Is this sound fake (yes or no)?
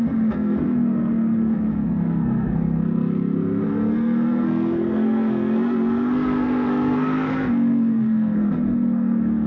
yes